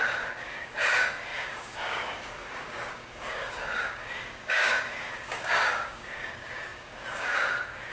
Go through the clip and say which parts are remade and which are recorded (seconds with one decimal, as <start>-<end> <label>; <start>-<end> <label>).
0.0-7.9 remade